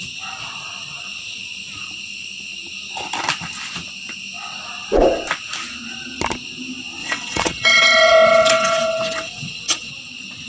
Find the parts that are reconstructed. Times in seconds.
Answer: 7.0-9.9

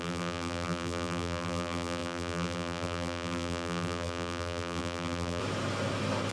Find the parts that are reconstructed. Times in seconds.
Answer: 0.0-5.4

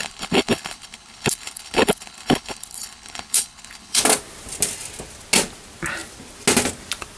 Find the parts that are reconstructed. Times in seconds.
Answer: 0.0-4.0

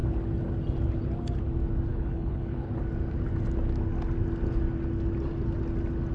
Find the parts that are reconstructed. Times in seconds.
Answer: 1.9-2.8

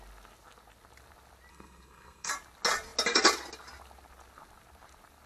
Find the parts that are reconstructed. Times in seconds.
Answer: 1.5-2.3

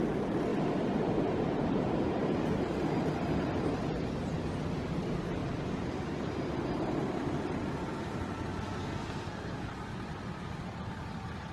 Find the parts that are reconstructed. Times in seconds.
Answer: 8.8-9.7

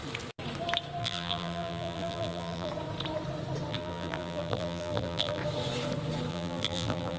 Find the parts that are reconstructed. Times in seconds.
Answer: 1.0-2.7; 3.7-5.4; 6.3-7.2